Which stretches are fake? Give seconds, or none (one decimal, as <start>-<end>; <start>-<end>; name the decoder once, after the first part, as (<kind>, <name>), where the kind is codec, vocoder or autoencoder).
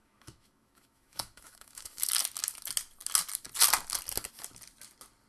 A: 0.0-2.1 (autoencoder, DAC-VAE)